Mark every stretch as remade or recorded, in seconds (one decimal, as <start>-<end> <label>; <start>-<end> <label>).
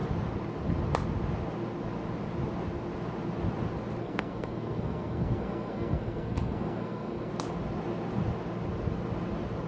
0.0-4.0 recorded; 4.0-7.3 remade; 7.3-9.7 recorded